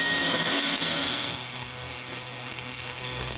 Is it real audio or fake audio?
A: fake